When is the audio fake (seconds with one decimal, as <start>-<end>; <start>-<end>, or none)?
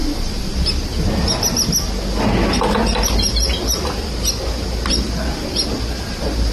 0.0-0.5